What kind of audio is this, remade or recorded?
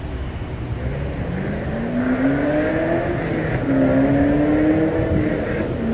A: recorded